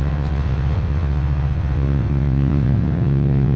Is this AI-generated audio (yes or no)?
yes